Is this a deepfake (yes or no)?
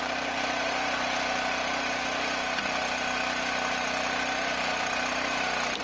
yes